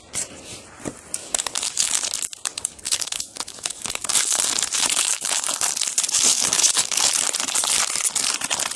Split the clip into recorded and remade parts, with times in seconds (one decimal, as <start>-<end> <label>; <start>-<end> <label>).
0.0-1.2 recorded; 1.2-2.0 remade; 2.0-2.5 recorded; 2.5-5.5 remade; 5.5-6.3 recorded; 6.3-7.1 remade; 7.1-8.8 recorded